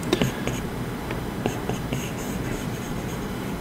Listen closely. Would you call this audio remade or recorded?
remade